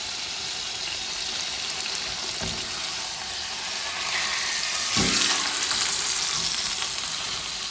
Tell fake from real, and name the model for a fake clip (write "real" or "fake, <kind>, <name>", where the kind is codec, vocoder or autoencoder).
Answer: real